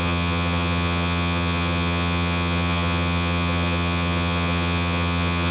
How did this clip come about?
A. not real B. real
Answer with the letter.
A